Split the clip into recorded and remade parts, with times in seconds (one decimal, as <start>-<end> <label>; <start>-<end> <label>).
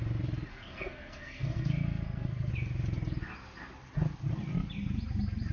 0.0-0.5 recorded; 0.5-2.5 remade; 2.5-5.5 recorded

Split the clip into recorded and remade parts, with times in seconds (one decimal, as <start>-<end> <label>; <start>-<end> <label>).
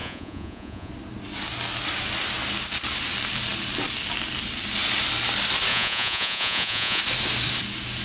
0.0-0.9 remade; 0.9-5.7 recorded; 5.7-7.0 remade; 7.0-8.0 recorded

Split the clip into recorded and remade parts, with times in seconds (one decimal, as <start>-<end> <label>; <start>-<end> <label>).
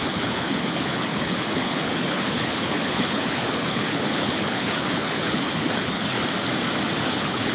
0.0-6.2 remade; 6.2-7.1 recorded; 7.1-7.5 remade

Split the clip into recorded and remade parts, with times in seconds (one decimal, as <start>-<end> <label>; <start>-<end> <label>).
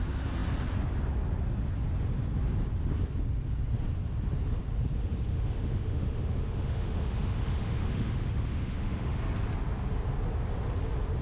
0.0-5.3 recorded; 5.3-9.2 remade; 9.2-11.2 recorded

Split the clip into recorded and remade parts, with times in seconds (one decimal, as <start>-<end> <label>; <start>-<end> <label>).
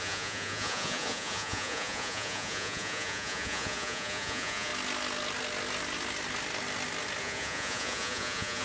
0.0-4.7 remade; 4.7-7.2 recorded; 7.2-8.6 remade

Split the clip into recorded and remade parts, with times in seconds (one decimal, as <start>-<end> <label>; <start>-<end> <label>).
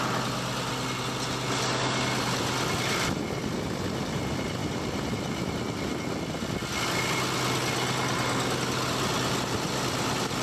0.0-4.6 recorded; 4.6-6.8 remade; 6.8-10.4 recorded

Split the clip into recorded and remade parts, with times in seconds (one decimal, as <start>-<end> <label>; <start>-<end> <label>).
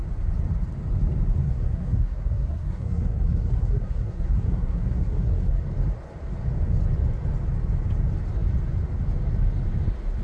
0.0-1.4 recorded; 1.4-5.6 remade; 5.6-10.2 recorded